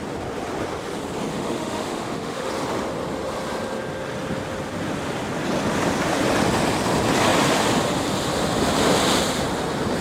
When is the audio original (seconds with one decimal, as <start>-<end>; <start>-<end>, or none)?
0.0-1.3; 2.5-10.0